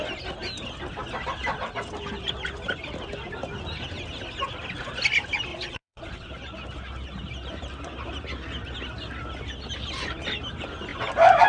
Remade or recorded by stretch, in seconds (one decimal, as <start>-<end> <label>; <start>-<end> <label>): 0.0-5.5 recorded; 5.5-6.3 remade; 6.3-11.5 recorded